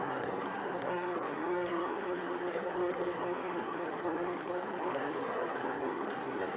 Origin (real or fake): fake